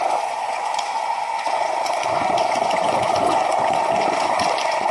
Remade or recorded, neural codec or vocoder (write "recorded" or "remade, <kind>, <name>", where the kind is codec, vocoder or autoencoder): remade, vocoder, Vocos